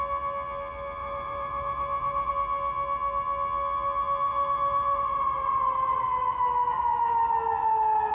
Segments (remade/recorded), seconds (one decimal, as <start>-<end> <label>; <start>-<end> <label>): 0.0-1.0 recorded; 1.0-2.3 remade; 2.3-4.3 recorded; 4.3-6.0 remade; 6.0-8.1 recorded